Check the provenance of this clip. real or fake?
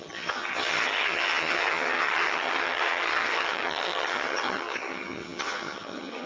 fake